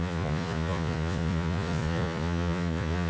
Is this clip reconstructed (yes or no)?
yes